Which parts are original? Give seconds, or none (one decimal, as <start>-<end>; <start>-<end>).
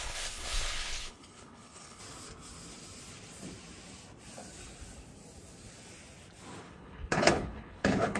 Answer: 2.0-6.6